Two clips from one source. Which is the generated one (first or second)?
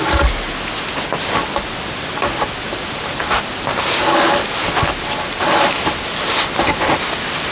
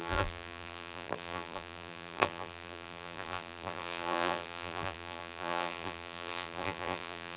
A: second